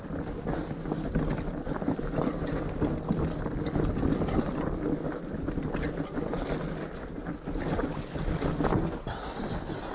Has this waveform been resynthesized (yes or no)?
no